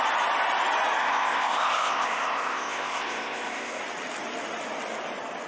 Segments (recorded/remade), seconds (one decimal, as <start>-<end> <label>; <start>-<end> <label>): 0.0-1.0 recorded; 1.0-3.8 remade; 3.8-5.5 recorded